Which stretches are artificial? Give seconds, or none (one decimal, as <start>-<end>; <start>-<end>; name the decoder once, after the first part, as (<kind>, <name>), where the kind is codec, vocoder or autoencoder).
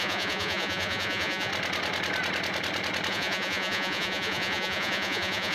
0.0-1.5 (vocoder, Vocos); 3.1-5.5